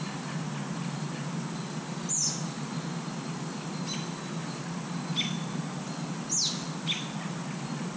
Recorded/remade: recorded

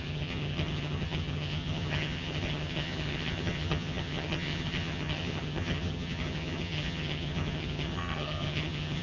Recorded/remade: remade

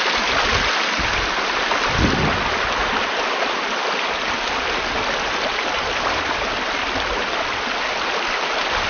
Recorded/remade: recorded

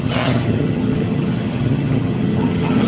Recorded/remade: remade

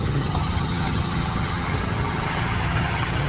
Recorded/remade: remade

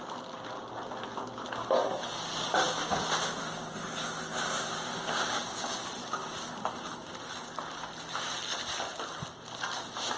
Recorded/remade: recorded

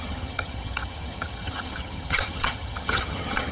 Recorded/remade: remade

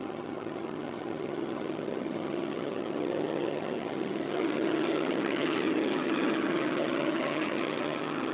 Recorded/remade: remade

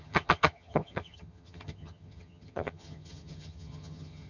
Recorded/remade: remade